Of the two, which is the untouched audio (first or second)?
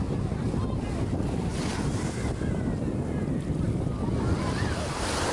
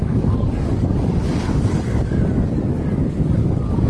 first